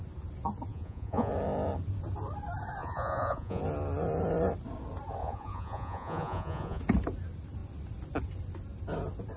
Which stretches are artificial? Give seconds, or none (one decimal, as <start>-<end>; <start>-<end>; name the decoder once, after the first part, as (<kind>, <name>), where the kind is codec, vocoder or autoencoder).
0.7-1.3 (vocoder, Vocos); 2.8-3.6; 5.2-6.8